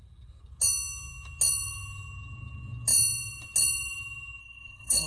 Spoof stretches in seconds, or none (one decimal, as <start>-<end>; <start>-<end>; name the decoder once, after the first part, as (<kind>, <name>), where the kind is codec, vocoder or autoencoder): 4.4-5.1 (codec, SNAC)